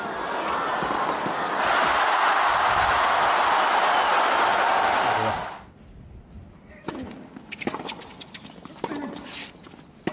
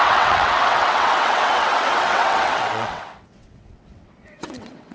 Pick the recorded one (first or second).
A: first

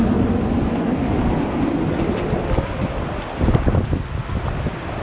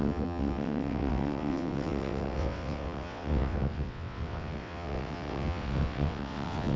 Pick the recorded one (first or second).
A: first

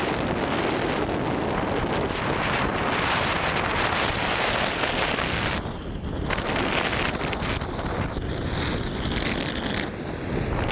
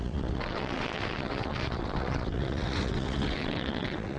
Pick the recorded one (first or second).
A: first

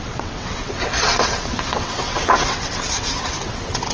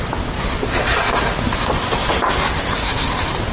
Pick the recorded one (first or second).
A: second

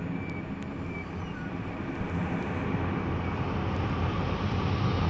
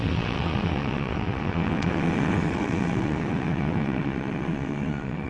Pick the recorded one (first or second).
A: first